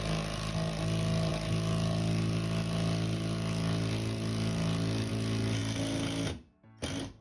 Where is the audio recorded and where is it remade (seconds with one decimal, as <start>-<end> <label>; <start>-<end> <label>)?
0.0-7.2 recorded